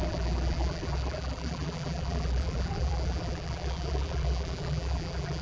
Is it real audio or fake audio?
fake